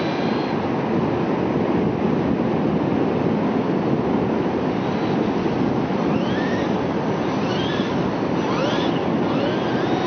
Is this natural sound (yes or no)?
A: yes